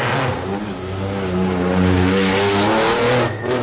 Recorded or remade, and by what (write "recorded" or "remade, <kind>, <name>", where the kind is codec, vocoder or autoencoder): recorded